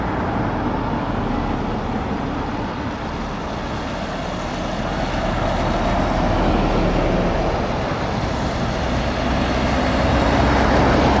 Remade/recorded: recorded